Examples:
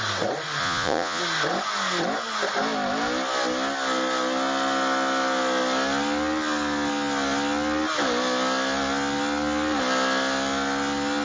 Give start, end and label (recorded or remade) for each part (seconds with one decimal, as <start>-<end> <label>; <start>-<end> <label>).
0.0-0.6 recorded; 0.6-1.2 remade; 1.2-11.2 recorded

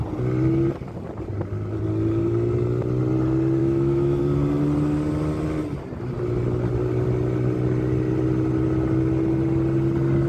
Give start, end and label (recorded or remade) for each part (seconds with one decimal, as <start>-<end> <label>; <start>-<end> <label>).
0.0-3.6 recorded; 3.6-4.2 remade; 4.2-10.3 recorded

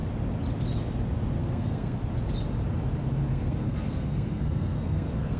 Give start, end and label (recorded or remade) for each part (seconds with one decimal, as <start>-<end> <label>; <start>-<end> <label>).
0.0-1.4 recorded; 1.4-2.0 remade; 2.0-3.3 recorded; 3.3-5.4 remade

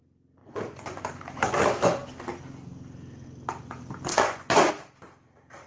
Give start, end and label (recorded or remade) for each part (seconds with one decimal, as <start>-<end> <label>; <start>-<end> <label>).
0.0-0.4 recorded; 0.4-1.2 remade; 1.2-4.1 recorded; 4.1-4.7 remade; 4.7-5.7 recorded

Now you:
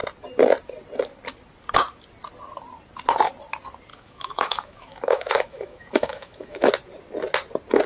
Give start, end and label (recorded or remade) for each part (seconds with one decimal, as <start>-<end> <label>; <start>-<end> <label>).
0.0-3.9 recorded; 3.9-6.7 remade; 6.7-7.9 recorded